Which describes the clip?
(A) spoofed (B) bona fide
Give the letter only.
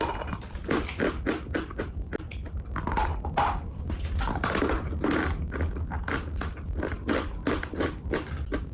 B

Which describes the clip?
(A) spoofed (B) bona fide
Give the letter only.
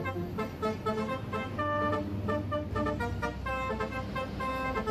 B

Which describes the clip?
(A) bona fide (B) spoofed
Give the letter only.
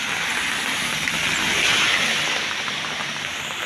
A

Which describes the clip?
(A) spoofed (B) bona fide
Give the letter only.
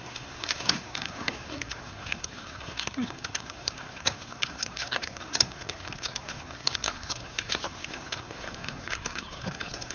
A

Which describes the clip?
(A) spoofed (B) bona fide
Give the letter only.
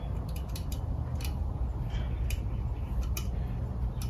B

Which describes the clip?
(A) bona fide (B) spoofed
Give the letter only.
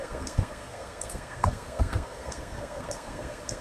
B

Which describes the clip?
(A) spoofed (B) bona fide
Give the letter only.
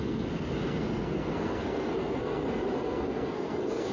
A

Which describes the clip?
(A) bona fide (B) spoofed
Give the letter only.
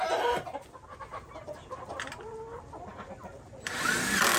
A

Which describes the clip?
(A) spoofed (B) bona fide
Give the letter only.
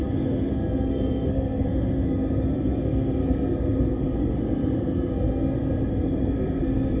A